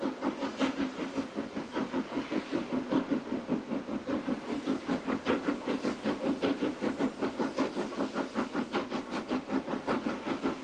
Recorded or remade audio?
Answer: recorded